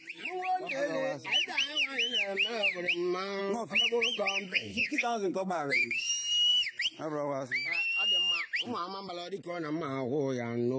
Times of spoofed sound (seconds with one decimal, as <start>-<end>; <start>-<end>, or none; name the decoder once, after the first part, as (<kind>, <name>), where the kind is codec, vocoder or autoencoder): 4.5-6.1 (codec, SNAC)